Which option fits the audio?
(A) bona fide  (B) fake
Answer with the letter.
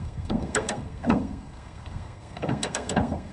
B